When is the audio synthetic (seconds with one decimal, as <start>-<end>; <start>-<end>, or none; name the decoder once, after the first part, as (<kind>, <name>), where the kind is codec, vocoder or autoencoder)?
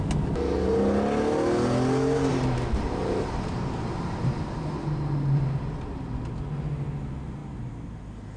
2.3-5.6 (vocoder, BigVGAN v2)